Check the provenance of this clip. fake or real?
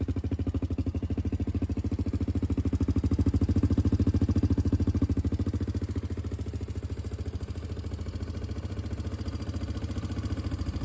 real